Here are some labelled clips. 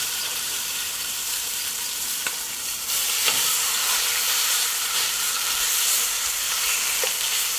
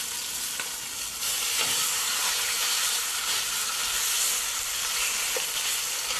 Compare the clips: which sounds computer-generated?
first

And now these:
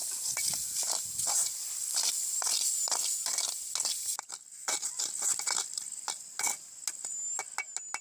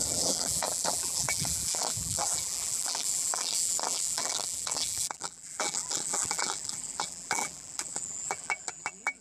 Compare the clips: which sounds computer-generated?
second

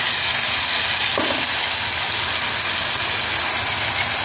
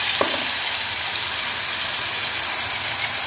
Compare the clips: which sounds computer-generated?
second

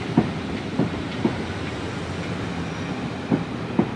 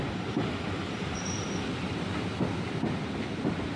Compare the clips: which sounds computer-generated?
second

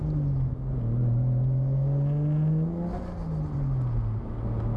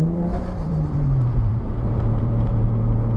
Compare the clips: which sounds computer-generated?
second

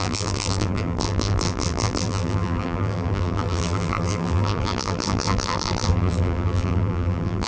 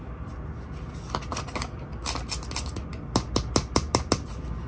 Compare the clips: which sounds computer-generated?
first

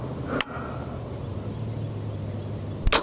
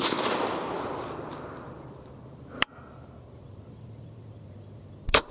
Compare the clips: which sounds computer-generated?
second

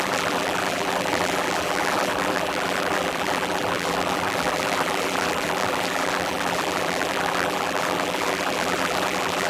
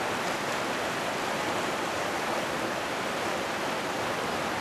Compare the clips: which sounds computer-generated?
first